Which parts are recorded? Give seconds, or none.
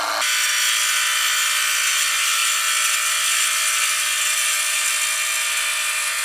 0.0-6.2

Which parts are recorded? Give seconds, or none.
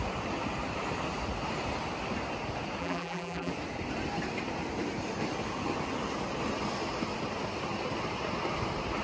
0.0-2.8; 3.5-9.0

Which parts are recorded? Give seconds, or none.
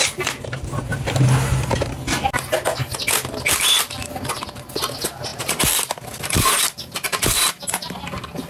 0.0-8.5